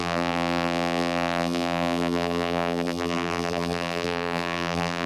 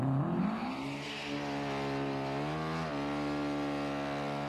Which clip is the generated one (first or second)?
first